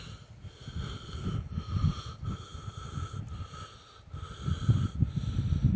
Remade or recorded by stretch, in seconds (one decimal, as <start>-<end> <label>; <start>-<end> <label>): 0.0-5.8 recorded